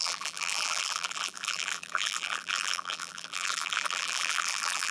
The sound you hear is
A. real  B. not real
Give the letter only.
B